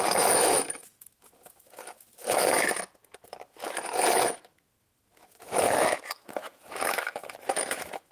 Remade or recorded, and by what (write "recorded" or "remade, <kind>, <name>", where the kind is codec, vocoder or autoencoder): remade, autoencoder, DAC-VAE